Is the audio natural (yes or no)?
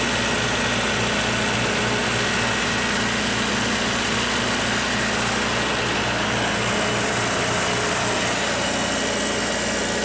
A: yes